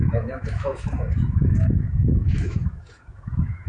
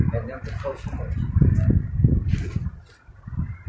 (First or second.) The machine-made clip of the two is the first